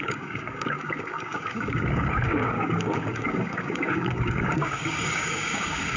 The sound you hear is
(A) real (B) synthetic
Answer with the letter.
B